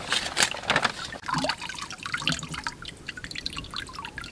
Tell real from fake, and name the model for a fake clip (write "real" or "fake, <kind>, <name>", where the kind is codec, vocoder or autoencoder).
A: real